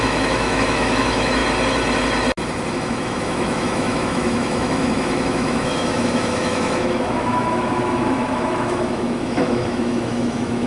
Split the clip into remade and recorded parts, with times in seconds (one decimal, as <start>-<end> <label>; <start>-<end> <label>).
0.0-1.4 remade; 1.4-2.7 recorded; 2.7-10.7 remade